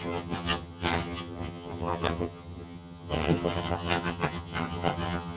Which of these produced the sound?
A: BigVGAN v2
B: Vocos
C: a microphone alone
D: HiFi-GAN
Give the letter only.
D